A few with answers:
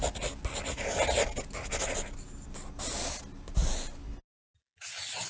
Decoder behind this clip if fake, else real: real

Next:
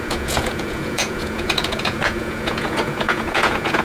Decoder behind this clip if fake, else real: fake, vocoder, Vocos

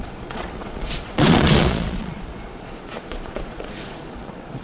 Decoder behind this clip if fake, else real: fake, vocoder, Vocos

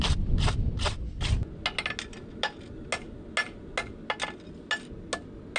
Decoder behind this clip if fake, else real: real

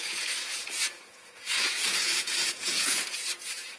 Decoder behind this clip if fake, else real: fake, vocoder, Vocos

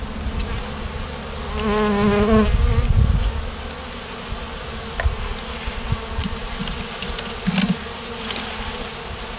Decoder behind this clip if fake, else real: real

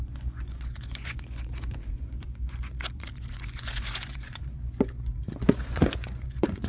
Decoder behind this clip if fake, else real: fake, vocoder, Vocos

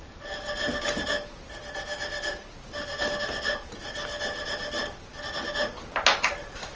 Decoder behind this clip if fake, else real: real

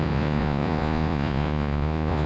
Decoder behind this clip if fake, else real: fake, vocoder, Vocos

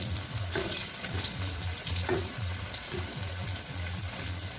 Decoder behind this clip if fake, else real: fake, vocoder, Vocos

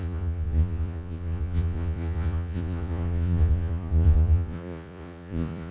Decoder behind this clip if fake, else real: fake, vocoder, Vocos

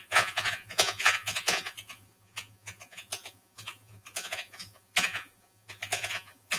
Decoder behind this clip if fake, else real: fake, vocoder, Vocos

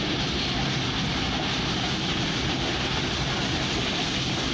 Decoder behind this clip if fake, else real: real